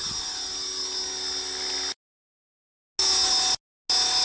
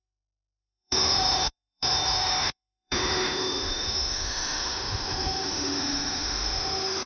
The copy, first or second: second